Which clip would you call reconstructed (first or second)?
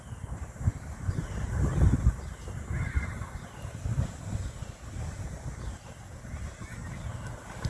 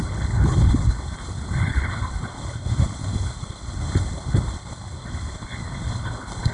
second